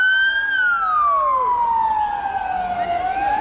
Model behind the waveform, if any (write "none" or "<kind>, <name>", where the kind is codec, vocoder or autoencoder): none